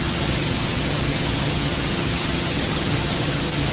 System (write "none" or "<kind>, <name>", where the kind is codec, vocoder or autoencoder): vocoder, HiFi-GAN